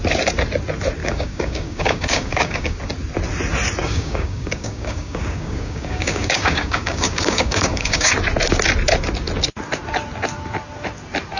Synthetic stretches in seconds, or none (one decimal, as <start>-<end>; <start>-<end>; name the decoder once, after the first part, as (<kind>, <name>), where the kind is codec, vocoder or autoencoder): 1.0-2.8 (codec, DAC); 3.8-8.1

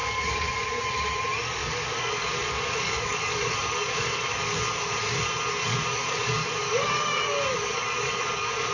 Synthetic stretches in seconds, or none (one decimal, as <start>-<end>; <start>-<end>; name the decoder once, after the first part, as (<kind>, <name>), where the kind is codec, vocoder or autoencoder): 0.0-0.8 (codec, DAC); 1.6-4.6; 5.7-8.7

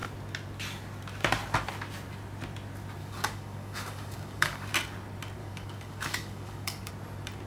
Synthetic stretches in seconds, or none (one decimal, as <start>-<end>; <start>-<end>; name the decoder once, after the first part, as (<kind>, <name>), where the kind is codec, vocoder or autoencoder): 3.0-4.7 (codec, DAC); 5.4-6.9

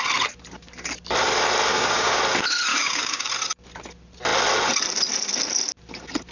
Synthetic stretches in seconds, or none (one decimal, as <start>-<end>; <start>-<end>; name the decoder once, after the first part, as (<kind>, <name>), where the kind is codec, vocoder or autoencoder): 1.7-2.2 (codec, DAC); 2.7-3.3